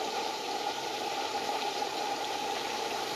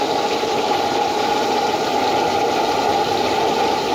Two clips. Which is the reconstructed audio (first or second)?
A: first